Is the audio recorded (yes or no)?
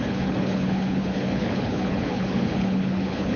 no